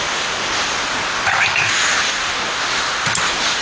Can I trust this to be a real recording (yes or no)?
yes